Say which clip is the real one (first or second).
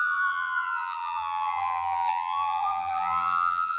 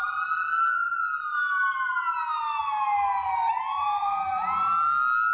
second